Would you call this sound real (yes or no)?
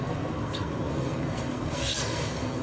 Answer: no